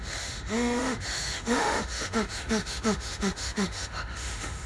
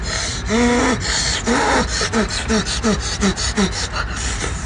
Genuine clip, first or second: second